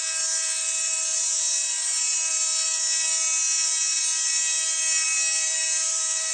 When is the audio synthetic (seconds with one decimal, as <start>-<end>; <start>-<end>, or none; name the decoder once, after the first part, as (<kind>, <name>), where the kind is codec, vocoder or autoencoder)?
none